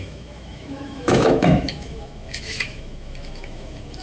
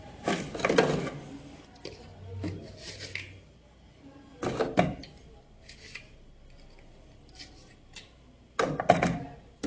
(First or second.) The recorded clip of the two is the second